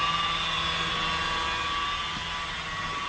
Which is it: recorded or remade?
recorded